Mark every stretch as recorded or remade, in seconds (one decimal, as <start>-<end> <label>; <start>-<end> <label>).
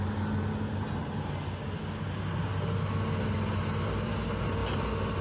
0.0-5.2 recorded